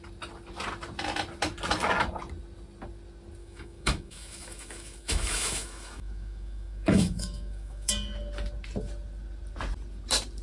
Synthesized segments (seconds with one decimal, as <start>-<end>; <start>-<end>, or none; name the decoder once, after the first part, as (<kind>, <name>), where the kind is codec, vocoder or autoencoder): 3.4-7.9 (autoencoder, DAC-VAE)